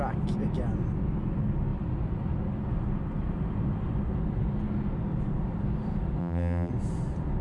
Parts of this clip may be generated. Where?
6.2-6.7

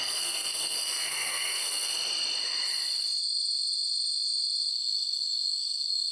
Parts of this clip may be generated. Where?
0.0-1.9; 4.7-6.1

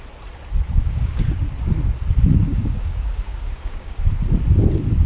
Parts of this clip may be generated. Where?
0.8-1.4; 2.5-4.0

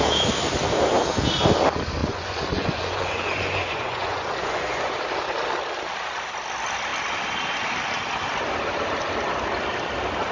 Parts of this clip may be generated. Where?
2.0-4.9

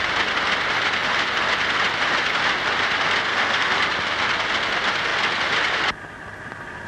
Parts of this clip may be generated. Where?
3.3-3.8

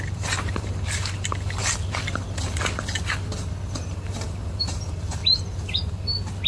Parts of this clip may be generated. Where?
0.0-1.6; 3.9-5.2